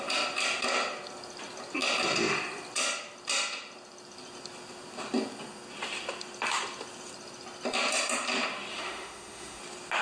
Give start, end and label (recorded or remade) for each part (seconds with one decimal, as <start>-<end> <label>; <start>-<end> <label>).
0.0-8.7 recorded; 8.7-9.6 remade; 9.6-10.0 recorded